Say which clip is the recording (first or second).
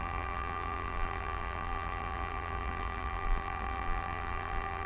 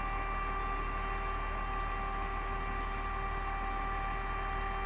second